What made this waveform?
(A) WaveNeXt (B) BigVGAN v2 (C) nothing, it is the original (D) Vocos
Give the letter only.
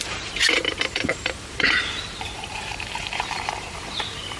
B